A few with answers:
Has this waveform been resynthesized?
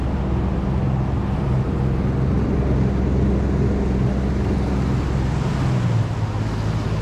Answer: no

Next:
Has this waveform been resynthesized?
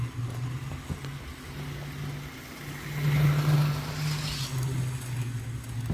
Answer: no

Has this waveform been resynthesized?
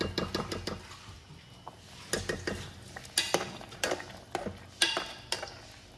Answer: no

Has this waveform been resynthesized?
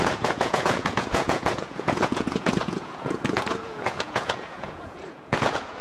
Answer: yes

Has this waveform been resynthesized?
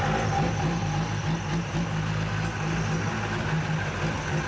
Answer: no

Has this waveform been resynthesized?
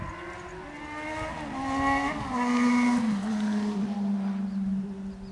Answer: no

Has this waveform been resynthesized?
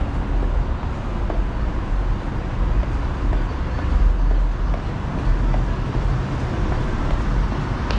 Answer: no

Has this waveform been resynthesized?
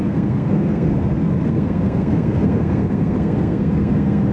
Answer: yes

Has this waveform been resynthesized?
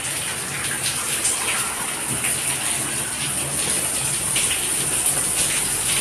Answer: no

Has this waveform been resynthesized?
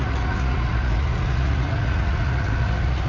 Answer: yes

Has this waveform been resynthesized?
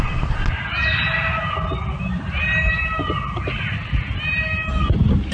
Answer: no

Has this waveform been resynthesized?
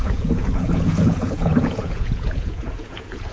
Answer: yes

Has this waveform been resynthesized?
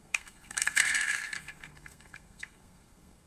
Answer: yes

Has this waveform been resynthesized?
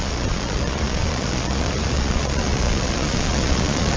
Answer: yes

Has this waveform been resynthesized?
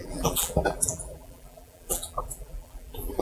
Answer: yes